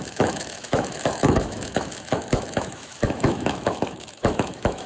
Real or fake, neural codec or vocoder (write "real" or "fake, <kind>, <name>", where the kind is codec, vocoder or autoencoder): fake, autoencoder, DAC-VAE